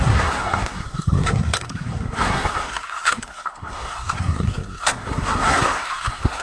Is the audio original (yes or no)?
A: no